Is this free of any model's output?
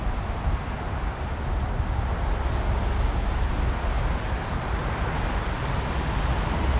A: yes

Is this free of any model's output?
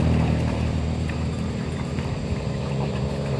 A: no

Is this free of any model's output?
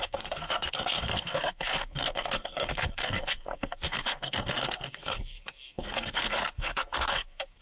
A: no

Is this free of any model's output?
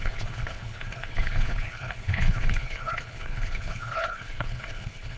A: no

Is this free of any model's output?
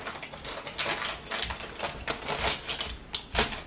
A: yes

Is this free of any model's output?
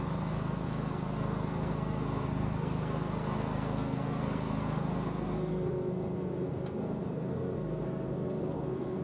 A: no